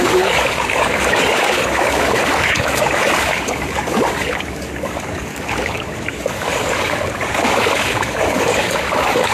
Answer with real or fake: fake